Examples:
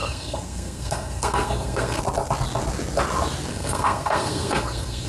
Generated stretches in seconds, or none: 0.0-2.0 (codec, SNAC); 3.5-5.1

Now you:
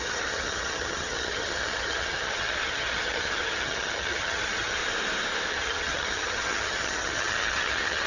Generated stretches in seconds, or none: 0.0-4.8 (vocoder, HiFi-GAN); 5.5-8.1

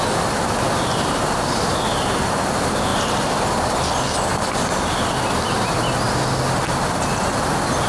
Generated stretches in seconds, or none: none

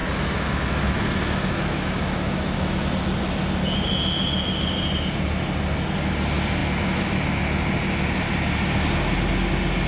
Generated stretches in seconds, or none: 0.0-2.8 (autoencoder, DAC-VAE)

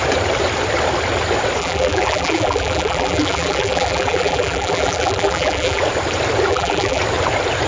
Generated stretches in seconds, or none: 1.6-5.8 (vocoder, BigVGAN v2); 6.5-7.0

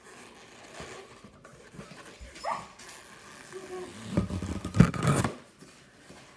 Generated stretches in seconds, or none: none